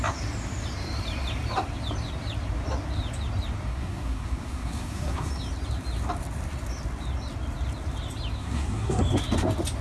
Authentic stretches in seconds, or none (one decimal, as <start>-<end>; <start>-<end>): 0.0-3.7; 5.3-8.4; 9.0-9.8